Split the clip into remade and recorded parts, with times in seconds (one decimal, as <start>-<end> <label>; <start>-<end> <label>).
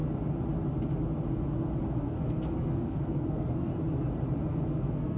0.0-1.8 recorded; 1.8-3.7 remade; 3.7-4.5 recorded; 4.5-5.2 remade